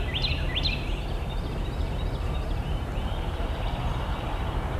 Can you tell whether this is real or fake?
fake